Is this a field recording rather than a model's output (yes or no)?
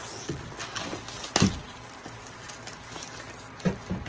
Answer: yes